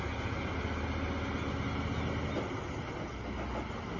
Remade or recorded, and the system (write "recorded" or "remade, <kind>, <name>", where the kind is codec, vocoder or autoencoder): recorded